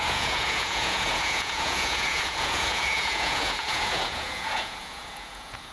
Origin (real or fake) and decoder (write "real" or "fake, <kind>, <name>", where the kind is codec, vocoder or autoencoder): fake, vocoder, Vocos